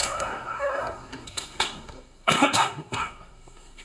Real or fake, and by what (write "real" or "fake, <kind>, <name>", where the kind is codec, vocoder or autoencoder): fake, codec, SNAC